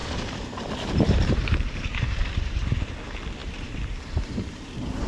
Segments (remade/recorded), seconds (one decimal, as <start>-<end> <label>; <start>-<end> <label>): 0.0-2.9 remade; 2.9-3.4 recorded; 3.4-5.1 remade